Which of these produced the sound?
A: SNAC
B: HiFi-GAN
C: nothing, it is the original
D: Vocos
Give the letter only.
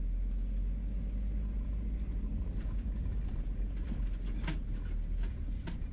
C